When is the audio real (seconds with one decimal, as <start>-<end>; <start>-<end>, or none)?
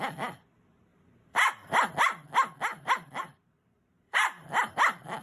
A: 0.0-0.9; 1.8-2.7; 4.8-5.2